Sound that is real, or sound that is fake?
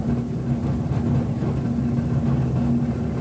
real